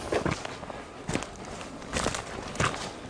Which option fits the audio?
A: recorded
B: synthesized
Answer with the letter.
A